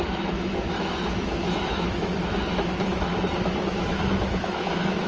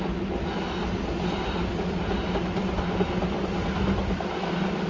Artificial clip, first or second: first